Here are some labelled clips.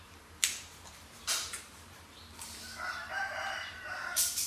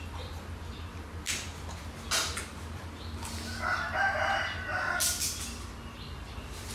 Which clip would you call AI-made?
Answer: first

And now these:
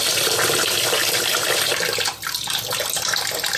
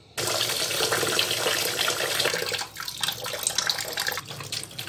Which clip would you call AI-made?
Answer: first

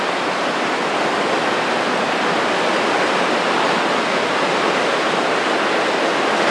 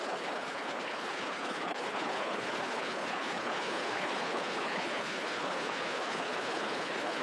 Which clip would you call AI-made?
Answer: second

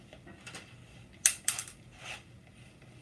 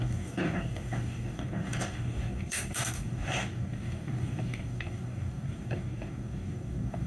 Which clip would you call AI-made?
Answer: second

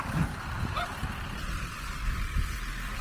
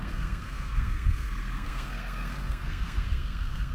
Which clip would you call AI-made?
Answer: second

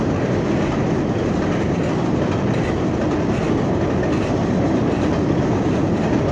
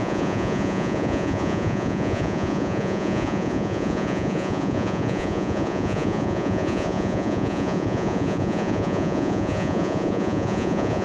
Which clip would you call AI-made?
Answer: second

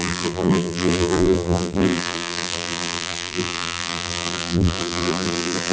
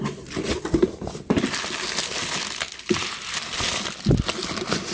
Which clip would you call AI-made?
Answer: first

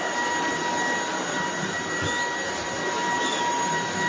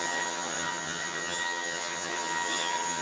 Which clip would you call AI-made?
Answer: second